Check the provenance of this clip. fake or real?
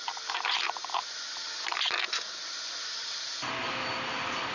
real